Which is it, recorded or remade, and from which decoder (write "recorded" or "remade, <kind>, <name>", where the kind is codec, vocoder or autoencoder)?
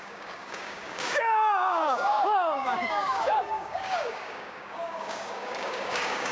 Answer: remade, codec, DAC